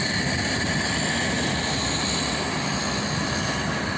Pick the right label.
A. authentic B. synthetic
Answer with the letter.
A